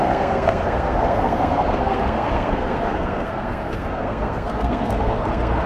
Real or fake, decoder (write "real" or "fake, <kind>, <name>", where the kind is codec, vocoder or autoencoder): fake, codec, SNAC